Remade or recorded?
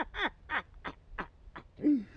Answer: recorded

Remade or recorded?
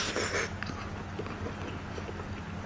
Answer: recorded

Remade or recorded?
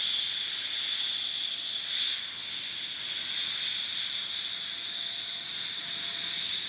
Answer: recorded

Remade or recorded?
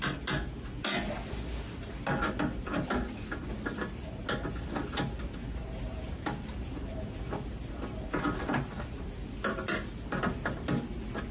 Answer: recorded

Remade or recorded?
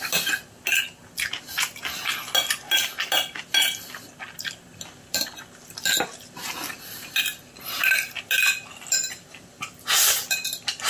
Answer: recorded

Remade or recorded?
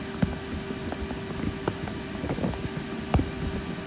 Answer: recorded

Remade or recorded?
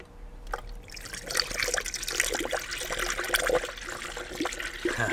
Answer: recorded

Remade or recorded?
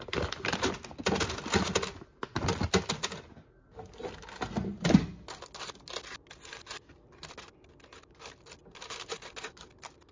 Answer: recorded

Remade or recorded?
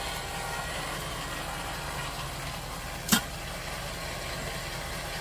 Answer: recorded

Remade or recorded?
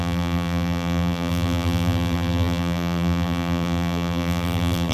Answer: remade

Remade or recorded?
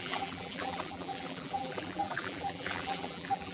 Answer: remade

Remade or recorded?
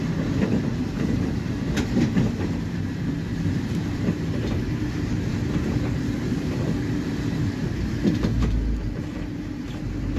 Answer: remade